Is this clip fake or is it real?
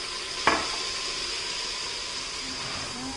real